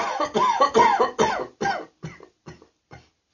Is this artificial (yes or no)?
no